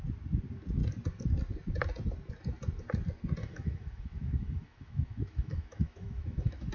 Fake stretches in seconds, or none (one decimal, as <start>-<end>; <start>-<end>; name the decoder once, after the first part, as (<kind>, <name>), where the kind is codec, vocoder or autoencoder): 3.4-6.7 (autoencoder, DAC-VAE)